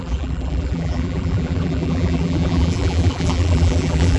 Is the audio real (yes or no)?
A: no